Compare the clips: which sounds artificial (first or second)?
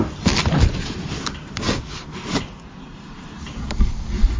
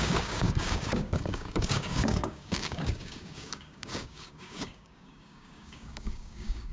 second